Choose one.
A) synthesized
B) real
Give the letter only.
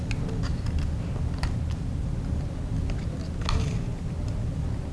B